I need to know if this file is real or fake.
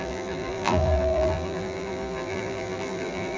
fake